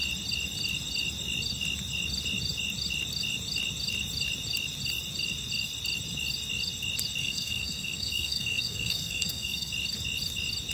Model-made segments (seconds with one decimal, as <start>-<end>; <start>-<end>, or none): 7.2-9.7